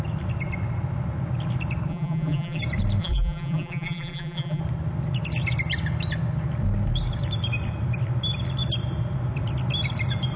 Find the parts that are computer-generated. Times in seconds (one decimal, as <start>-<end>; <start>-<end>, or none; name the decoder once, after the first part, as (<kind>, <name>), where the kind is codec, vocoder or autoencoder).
1.9-2.6 (vocoder, BigVGAN v2); 3.0-4.6